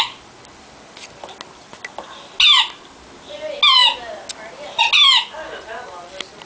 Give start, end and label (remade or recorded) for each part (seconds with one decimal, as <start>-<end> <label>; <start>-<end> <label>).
0.0-6.5 recorded